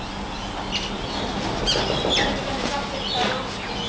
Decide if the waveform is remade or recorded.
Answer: recorded